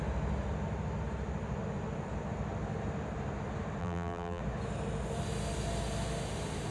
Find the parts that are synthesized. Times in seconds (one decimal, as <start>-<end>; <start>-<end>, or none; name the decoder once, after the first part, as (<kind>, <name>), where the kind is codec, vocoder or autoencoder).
3.8-4.4 (vocoder, BigVGAN v2)